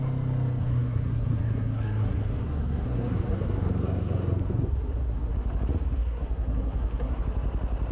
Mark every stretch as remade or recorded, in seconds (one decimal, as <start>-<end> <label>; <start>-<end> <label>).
0.0-0.6 recorded; 0.6-5.3 remade; 5.3-6.0 recorded; 6.0-7.2 remade; 7.2-7.9 recorded